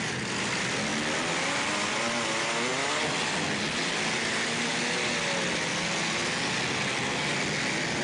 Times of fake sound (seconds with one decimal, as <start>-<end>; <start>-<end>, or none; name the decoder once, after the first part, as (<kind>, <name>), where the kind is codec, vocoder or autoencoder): none